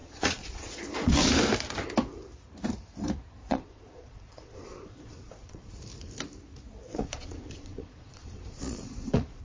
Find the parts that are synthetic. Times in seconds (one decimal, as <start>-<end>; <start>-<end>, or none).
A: 0.0-1.1; 3.4-5.7; 6.9-9.4